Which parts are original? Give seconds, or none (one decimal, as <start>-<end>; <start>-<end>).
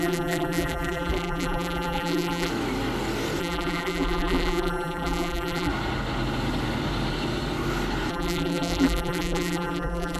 2.5-3.4; 5.7-8.1